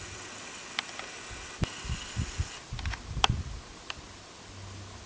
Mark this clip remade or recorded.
recorded